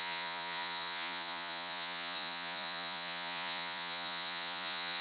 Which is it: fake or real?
fake